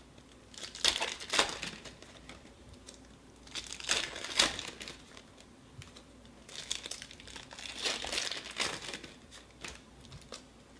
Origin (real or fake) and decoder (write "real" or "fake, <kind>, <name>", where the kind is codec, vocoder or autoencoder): real